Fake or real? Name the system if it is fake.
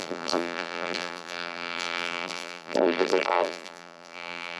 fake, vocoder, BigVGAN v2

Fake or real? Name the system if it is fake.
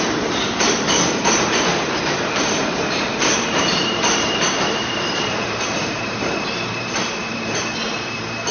fake, vocoder, BigVGAN v2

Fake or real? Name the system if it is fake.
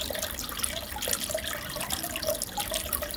real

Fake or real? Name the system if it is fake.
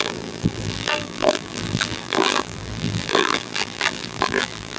fake, vocoder, BigVGAN v2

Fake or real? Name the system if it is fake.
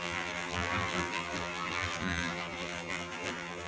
fake, vocoder, BigVGAN v2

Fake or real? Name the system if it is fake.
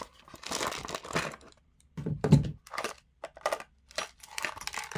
real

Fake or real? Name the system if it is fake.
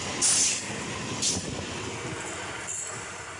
real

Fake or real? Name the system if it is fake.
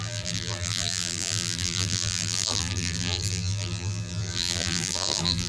fake, vocoder, BigVGAN v2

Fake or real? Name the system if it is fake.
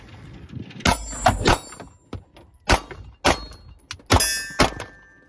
real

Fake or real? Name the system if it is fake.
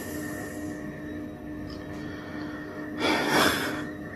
real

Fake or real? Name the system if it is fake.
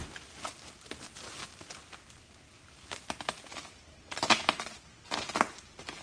real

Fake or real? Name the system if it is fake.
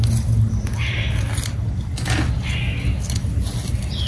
real